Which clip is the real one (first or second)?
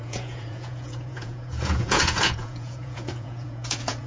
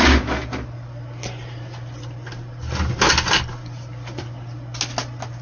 second